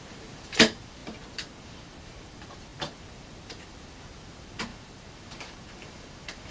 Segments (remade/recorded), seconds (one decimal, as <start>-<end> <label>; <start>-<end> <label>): 0.0-1.0 remade; 1.0-1.6 recorded; 1.6-6.5 remade

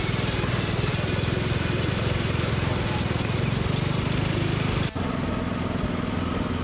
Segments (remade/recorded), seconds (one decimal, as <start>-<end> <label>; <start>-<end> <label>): 0.0-6.6 recorded

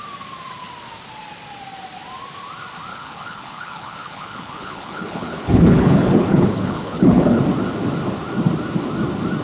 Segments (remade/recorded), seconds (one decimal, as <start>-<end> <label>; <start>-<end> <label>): 0.0-2.9 recorded; 2.9-7.4 remade; 7.4-9.4 recorded

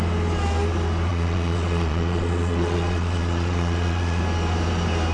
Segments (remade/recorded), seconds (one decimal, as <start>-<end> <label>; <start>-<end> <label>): 0.0-1.1 recorded; 1.1-4.2 remade; 4.2-5.1 recorded

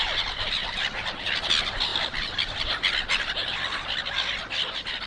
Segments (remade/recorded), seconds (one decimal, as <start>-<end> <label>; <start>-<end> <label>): 0.0-0.6 remade; 0.6-1.5 recorded; 1.5-5.1 remade